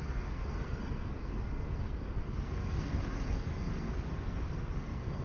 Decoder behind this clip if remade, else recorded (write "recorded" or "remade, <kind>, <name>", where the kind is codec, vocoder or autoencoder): remade, codec, SNAC